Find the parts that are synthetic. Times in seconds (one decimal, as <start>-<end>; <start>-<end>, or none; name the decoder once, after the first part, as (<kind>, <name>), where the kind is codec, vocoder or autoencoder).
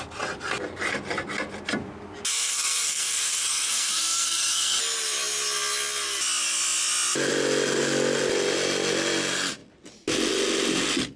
2.3-4.8 (codec, SNAC)